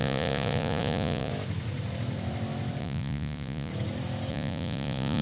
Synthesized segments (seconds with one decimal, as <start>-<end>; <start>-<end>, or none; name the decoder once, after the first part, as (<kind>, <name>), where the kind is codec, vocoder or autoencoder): 0.0-1.3 (vocoder, Vocos); 2.8-3.7; 4.3-5.2